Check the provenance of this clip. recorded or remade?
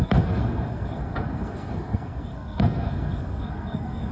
remade